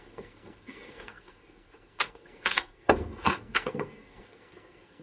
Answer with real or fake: fake